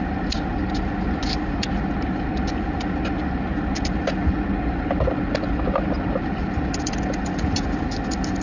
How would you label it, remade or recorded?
recorded